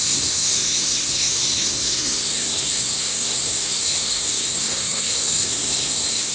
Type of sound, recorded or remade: remade